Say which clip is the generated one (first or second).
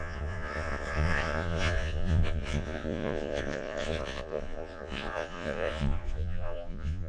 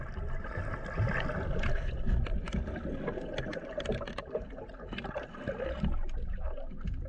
first